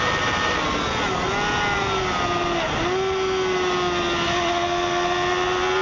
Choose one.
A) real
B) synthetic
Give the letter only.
A